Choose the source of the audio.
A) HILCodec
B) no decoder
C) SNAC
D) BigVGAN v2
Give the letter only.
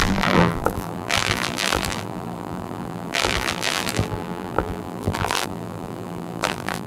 D